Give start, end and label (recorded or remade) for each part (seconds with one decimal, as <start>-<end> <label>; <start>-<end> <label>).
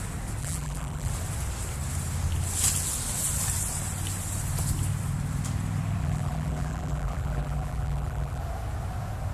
0.0-0.4 recorded; 0.4-1.1 remade; 1.1-6.0 recorded; 6.0-8.4 remade; 8.4-9.3 recorded